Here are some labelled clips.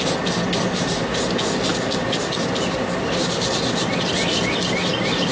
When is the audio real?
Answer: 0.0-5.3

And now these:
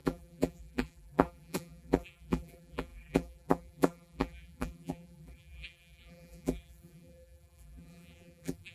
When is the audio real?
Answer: none

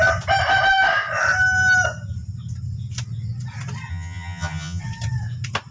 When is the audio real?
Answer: 0.0-3.9; 4.8-5.7